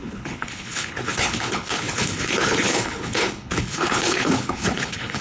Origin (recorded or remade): remade